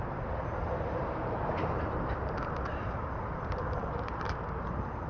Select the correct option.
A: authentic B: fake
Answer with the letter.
B